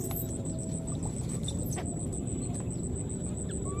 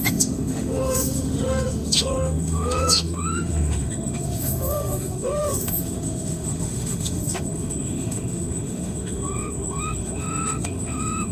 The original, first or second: first